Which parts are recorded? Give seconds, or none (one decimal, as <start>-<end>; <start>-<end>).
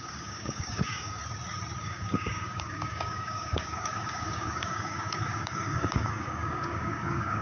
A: 1.2-1.8